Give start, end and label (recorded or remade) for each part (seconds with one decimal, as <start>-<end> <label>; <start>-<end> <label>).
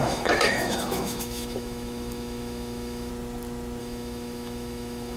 0.0-3.1 remade; 3.1-3.8 recorded; 3.8-5.2 remade